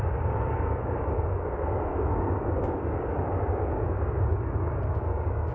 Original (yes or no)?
no